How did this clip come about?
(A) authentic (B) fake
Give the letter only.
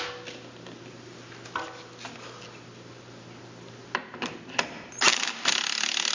A